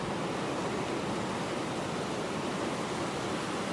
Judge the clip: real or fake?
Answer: real